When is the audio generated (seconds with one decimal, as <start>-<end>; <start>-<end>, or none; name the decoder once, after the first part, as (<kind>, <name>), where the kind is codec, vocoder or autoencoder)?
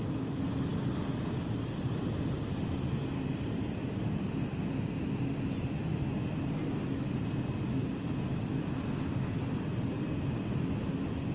none